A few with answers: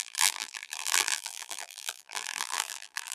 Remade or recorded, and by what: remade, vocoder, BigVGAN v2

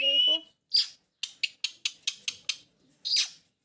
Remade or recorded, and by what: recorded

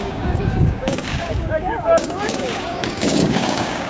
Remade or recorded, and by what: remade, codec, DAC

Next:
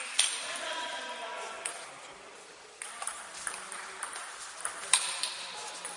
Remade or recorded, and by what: recorded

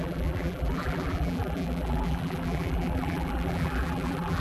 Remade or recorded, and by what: remade, vocoder, BigVGAN v2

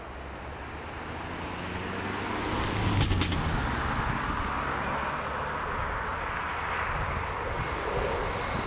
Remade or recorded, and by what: recorded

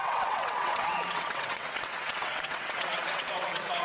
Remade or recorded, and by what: remade, vocoder, WaveNeXt